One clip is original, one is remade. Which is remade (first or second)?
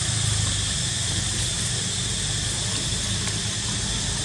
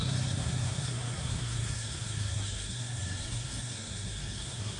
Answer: second